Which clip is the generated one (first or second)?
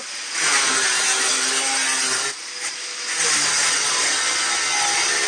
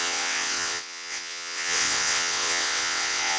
second